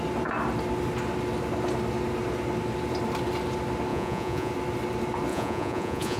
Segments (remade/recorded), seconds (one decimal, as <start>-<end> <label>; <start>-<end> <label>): 0.0-3.9 recorded; 3.9-4.5 remade; 4.5-5.3 recorded; 5.3-6.2 remade